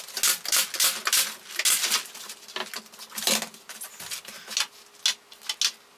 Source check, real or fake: real